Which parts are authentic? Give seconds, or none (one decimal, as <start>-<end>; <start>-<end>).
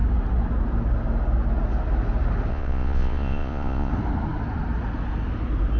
0.0-2.5; 3.9-5.8